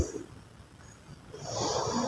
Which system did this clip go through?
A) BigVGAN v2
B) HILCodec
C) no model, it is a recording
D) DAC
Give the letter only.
C